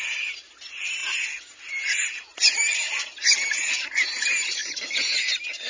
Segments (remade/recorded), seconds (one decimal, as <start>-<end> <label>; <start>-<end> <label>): 0.0-5.7 recorded